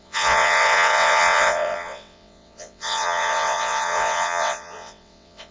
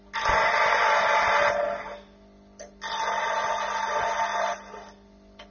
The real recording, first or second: second